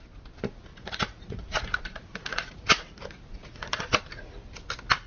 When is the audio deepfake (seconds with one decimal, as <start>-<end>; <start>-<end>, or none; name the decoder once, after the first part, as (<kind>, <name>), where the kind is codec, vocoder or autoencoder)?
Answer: 0.7-3.8 (vocoder, Vocos)